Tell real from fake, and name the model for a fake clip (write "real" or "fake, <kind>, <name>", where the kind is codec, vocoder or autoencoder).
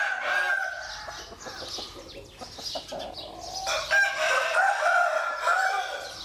real